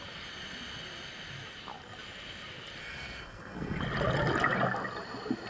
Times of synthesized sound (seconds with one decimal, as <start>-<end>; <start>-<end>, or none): 2.8-3.8